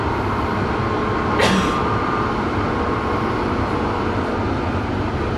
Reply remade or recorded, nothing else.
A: recorded